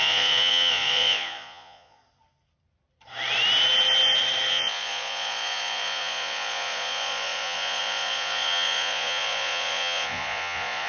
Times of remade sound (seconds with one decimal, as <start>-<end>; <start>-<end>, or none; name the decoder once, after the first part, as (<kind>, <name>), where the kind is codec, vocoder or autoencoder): 0.0-2.0 (vocoder, Vocos); 4.5-10.9